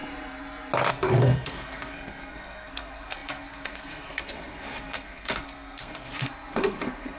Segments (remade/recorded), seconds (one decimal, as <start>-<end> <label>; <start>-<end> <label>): 0.0-0.9 recorded; 0.9-7.2 remade

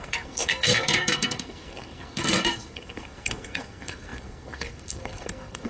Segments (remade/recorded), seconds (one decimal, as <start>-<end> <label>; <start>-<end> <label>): 0.0-5.7 remade